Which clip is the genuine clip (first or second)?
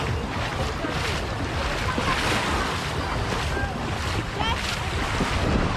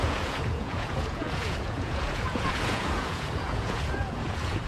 first